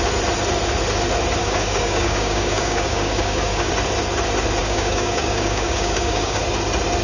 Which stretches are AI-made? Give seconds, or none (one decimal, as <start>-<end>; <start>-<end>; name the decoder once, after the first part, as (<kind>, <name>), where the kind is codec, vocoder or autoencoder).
1.4-3.7 (codec, DAC); 4.6-6.4